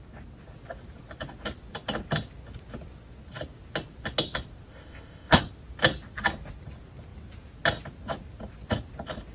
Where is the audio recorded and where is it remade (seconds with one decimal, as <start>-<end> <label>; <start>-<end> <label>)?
0.0-4.7 recorded; 4.7-5.4 remade; 5.4-9.3 recorded